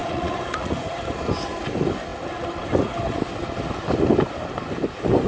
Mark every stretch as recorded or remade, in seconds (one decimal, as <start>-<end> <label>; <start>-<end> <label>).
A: 0.0-1.0 remade; 1.0-5.3 recorded